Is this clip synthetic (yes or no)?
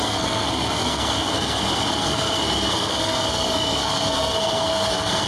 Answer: yes